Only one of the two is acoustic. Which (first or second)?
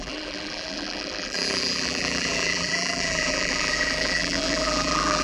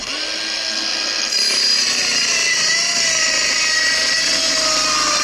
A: second